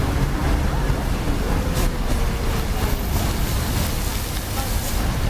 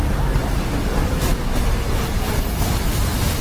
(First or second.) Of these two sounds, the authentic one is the first